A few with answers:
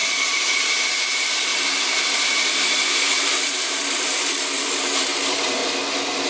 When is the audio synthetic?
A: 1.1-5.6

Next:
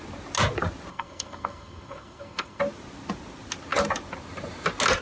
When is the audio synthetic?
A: 0.9-2.6

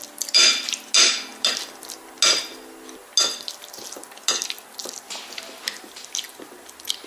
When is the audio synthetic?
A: none

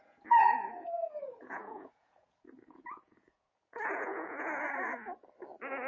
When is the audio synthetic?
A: 0.0-4.9